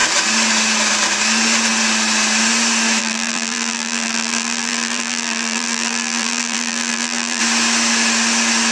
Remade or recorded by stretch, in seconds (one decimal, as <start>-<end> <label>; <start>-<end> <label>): 0.0-3.0 recorded; 3.0-7.4 remade; 7.4-8.7 recorded